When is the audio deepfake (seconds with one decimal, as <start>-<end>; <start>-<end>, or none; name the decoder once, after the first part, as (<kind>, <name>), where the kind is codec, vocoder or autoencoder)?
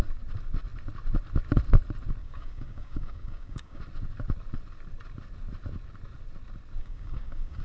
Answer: 2.2-3.8 (codec, DAC); 6.8-7.6